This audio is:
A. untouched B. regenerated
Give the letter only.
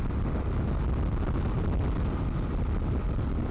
A